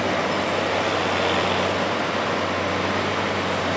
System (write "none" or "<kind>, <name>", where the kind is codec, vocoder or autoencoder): none